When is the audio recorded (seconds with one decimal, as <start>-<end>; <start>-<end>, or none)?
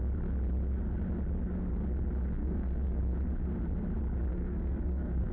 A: 0.0-2.4; 3.0-4.3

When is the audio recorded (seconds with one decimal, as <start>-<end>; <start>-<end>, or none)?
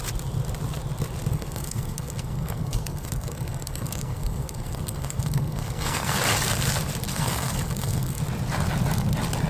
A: 0.0-1.3; 6.2-7.1; 8.2-9.5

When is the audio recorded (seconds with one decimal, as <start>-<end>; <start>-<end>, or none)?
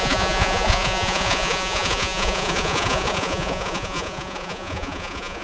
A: none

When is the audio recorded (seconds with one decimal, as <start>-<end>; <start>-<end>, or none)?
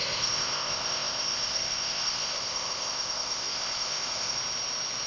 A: 4.4-5.1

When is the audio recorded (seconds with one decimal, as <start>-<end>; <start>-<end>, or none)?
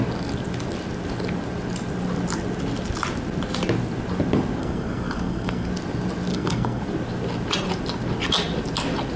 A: 0.0-4.6; 5.7-6.3; 6.8-9.2